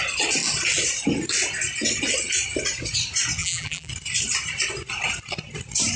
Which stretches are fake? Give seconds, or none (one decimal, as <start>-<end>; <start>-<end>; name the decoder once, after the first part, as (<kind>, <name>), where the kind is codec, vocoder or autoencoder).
3.4-3.9 (vocoder, BigVGAN v2)